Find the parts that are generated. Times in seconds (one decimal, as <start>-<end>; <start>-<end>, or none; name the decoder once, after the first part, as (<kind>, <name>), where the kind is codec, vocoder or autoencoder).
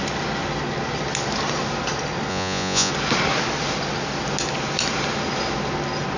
2.3-2.9 (vocoder, Vocos)